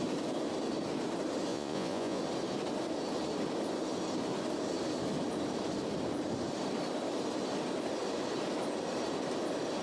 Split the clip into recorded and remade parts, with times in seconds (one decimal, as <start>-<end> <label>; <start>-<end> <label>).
0.0-1.5 recorded; 1.5-2.2 remade; 2.2-9.8 recorded